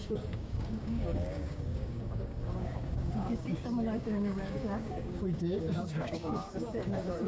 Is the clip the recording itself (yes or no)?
no